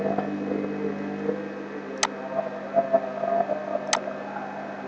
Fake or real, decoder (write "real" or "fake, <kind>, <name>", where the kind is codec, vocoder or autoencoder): real